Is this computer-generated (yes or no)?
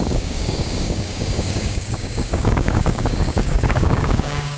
yes